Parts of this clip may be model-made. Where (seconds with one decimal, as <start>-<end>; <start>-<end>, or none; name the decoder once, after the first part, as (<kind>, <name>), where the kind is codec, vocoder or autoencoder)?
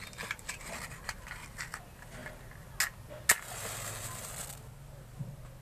none